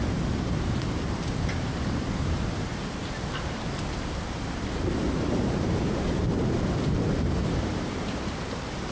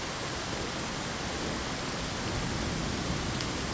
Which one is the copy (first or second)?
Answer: first